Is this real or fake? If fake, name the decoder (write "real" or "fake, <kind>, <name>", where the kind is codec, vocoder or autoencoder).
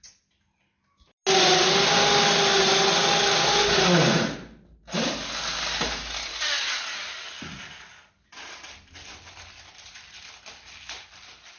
real